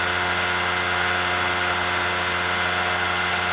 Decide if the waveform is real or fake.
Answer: real